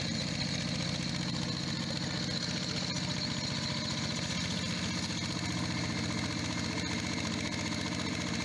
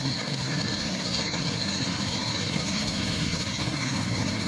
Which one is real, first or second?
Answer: first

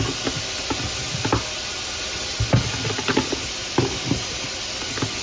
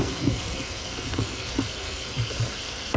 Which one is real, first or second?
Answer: first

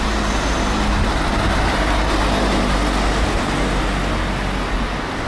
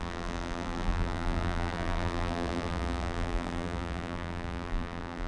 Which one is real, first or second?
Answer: first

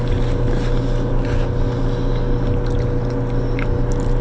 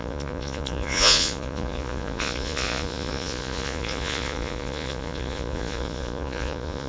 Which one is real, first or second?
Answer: first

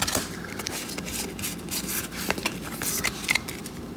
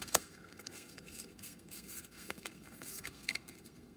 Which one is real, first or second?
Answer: first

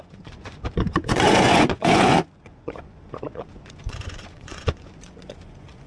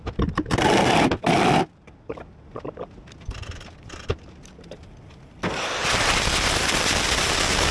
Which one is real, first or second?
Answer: second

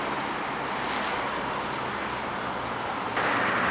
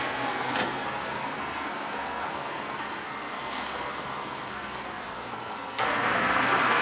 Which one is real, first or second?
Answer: first